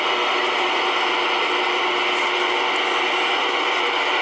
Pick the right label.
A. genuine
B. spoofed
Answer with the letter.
A